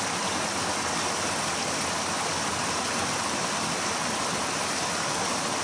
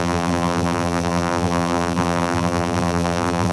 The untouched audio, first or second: first